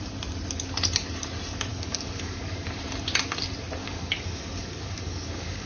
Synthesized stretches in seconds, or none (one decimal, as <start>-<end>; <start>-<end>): 1.7-2.8; 3.8-5.7